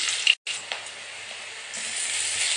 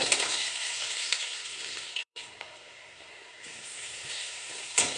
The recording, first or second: first